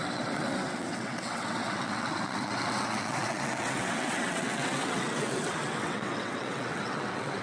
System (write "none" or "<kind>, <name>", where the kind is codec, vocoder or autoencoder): vocoder, WaveNeXt